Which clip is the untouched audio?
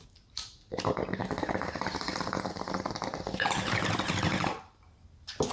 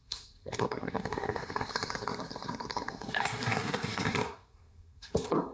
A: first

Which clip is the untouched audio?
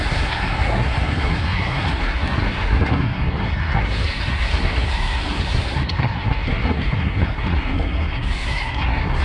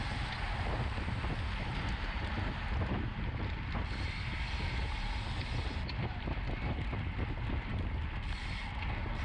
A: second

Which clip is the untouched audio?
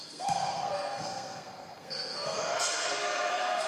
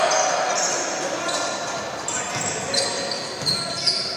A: second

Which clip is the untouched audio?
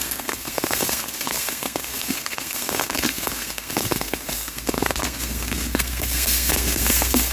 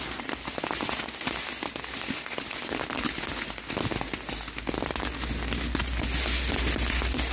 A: second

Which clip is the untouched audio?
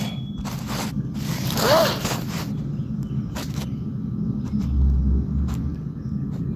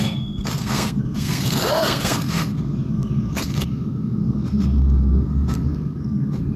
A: first